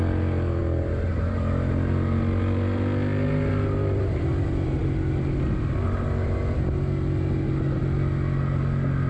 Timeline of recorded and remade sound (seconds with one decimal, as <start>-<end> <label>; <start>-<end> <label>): 0.0-9.1 recorded